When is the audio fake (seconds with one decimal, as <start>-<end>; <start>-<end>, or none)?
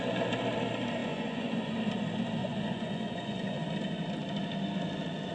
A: 1.0-1.7; 2.4-3.7